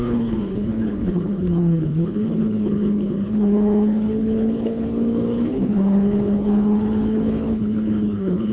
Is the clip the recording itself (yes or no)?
no